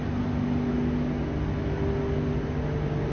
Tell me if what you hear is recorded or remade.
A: recorded